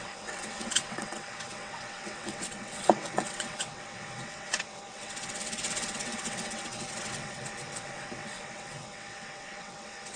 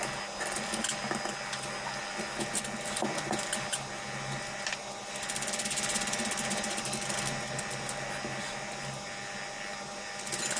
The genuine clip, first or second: second